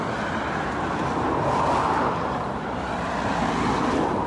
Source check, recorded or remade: recorded